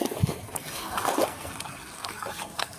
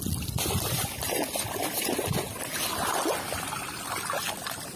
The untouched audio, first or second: second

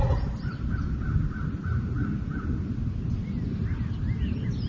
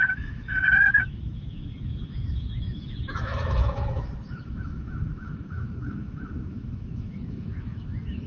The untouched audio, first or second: first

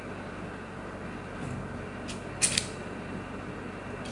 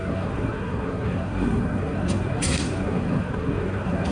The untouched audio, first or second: first